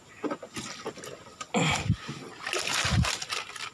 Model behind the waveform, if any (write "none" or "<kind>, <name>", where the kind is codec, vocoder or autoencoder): none